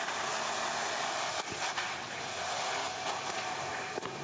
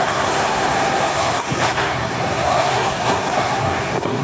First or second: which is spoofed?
second